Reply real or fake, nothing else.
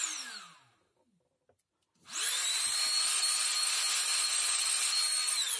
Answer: real